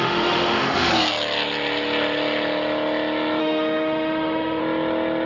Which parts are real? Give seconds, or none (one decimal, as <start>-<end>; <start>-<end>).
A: 0.9-3.4; 4.6-5.3